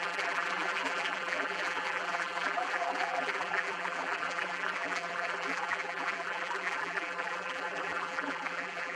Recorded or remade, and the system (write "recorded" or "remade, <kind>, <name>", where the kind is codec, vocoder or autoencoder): remade, vocoder, BigVGAN v2